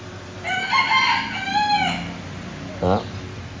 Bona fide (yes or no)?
yes